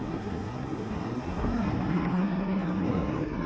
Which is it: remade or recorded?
remade